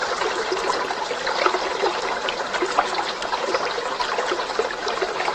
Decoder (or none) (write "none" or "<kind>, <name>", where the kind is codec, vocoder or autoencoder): none